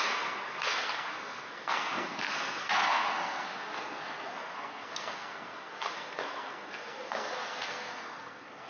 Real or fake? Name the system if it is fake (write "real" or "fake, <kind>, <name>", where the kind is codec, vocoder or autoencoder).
fake, codec, SNAC